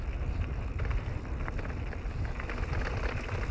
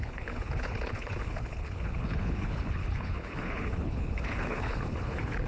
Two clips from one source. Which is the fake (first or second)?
second